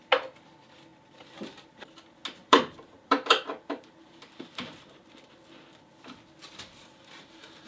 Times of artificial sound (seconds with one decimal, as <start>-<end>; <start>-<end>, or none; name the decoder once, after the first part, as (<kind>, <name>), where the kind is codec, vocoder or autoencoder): 0.9-1.7 (vocoder, BigVGAN v2); 2.4-5.2